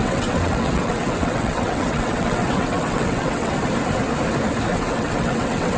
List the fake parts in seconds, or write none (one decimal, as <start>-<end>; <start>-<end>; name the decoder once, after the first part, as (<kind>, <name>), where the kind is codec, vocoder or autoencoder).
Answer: 0.0-3.5 (vocoder, WaveNeXt); 4.7-5.8